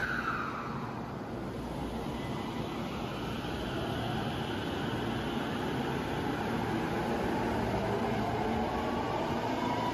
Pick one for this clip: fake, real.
real